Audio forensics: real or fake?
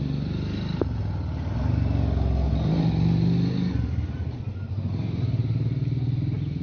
real